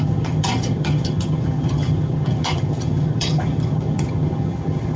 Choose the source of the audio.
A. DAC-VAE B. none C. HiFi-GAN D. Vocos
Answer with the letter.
C